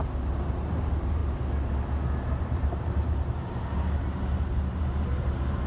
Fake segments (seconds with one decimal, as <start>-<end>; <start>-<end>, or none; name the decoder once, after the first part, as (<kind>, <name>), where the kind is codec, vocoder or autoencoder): 0.0-1.2 (vocoder, BigVGAN v2); 2.4-5.7